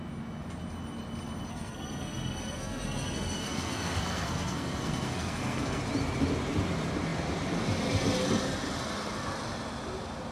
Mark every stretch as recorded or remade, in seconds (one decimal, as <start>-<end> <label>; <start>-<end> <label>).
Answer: 0.0-1.5 recorded; 1.5-5.8 remade; 5.8-10.3 recorded